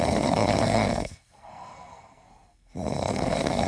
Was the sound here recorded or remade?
remade